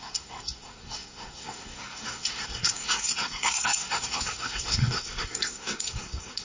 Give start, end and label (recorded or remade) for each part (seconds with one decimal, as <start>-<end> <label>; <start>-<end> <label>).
0.0-6.4 remade